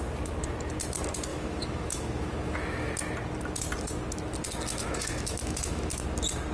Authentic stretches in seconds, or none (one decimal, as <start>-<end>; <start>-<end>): 0.0-1.3; 2.9-4.7; 5.9-6.5